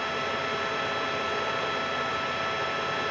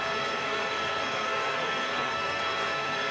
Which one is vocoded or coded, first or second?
second